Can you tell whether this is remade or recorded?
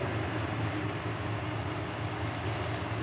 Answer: recorded